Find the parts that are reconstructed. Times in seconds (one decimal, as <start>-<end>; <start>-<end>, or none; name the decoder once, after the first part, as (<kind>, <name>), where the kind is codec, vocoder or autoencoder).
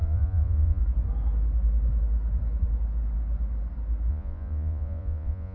0.0-0.8 (vocoder, Vocos); 4.1-5.5